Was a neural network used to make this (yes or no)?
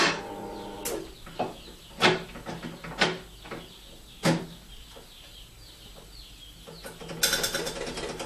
no